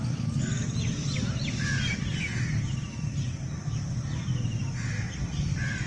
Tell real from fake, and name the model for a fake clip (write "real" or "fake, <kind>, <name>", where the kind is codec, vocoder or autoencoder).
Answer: real